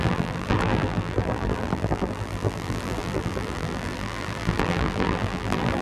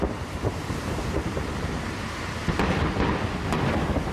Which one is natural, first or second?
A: second